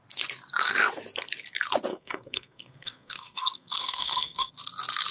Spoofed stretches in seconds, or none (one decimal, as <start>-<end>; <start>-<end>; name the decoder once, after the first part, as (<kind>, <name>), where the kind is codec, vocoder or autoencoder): 1.9-4.5 (codec, SNAC)